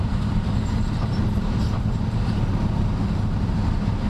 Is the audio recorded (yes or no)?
no